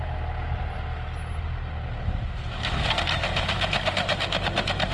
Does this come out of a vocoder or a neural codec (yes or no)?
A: no